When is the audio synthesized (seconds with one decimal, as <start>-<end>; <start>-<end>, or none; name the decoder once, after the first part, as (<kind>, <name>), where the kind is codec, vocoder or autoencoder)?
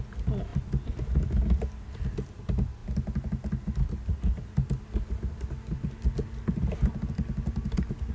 none